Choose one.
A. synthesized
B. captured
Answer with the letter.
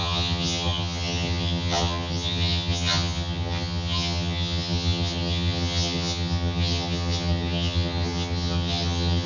A